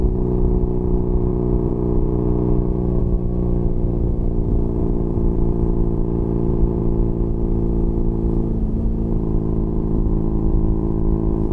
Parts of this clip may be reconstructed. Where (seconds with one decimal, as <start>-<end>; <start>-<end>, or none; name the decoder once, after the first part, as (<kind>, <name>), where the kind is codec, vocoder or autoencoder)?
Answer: 1.3-3.0 (vocoder, BigVGAN v2); 4.8-6.8; 9.7-11.5